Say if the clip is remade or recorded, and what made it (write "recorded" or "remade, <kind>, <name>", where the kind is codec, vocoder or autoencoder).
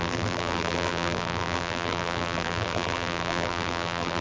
remade, vocoder, BigVGAN v2